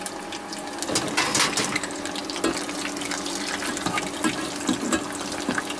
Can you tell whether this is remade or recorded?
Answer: recorded